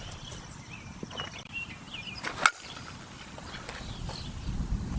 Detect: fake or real real